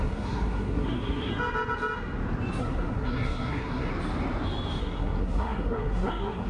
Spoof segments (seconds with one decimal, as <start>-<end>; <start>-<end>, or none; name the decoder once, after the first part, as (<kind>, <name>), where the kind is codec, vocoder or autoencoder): 0.0-1.3 (codec, SNAC); 2.6-3.9; 4.8-6.5